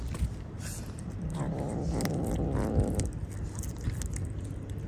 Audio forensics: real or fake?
real